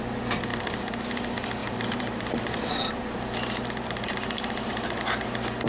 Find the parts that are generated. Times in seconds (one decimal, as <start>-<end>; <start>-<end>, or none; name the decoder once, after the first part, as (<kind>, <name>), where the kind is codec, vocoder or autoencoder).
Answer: 0.5-1.0 (vocoder, BigVGAN v2); 1.6-5.0